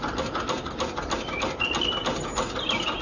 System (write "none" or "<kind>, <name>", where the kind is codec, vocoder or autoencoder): none